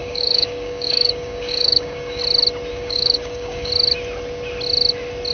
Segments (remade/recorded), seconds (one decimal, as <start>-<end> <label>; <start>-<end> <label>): 0.0-2.2 remade; 2.2-2.7 recorded; 2.7-3.7 remade; 3.7-5.3 recorded